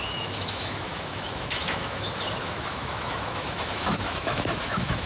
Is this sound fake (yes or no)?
yes